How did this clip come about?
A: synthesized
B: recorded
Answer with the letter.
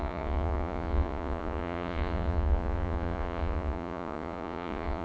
A